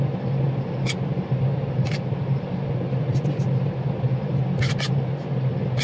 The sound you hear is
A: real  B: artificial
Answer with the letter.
A